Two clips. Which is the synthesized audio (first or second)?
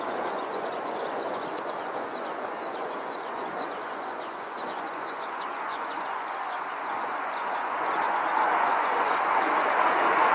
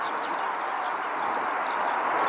first